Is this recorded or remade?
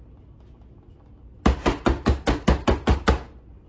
recorded